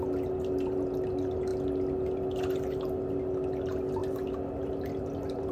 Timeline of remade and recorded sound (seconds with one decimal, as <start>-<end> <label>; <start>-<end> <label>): 0.0-5.5 recorded